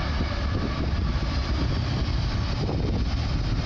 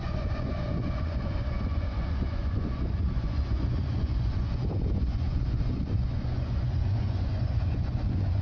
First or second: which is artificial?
second